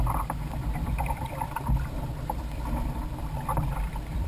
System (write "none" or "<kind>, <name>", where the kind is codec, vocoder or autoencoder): vocoder, BigVGAN v2